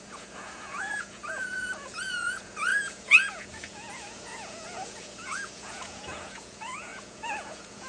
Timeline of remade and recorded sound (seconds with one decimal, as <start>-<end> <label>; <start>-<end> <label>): 0.0-7.9 remade